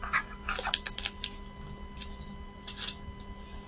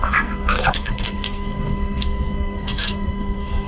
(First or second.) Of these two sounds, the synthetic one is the second